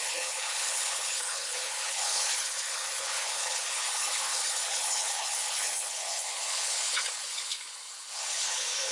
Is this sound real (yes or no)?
no